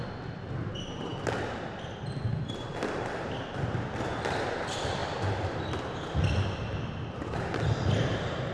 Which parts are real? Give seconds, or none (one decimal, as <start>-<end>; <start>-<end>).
0.0-8.5